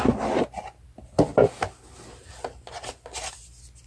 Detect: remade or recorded recorded